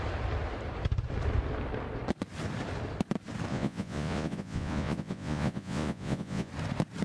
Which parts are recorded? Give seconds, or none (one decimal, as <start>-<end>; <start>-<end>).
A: 0.0-3.5; 6.5-7.0